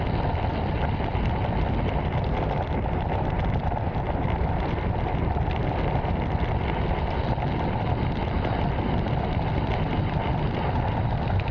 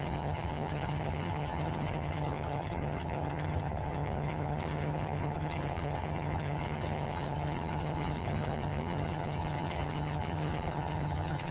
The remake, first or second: second